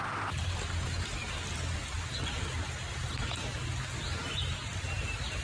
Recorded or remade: recorded